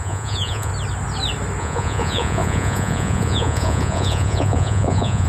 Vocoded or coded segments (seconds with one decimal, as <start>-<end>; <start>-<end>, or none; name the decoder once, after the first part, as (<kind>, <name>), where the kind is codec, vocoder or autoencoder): 0.0-0.7 (vocoder, Vocos); 1.6-5.3